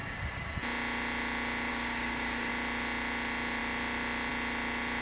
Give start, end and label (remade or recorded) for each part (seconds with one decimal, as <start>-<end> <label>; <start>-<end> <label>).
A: 0.0-0.5 remade; 0.5-1.7 recorded; 1.7-2.5 remade; 2.5-5.0 recorded